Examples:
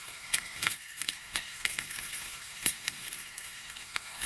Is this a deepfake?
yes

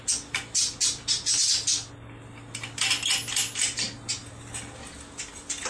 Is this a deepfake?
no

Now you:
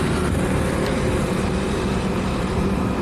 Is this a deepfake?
no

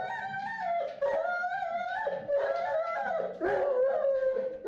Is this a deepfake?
no